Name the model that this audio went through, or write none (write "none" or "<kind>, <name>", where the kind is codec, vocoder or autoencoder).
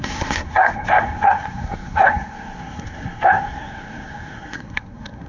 codec, SNAC